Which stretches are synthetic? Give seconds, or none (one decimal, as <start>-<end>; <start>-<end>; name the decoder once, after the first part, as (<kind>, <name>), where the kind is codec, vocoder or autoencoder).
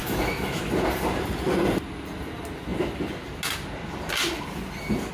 0.0-0.6 (autoencoder, DAC-VAE)